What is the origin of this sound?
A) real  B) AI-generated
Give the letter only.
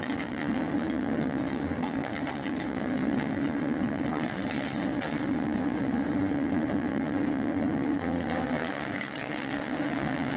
B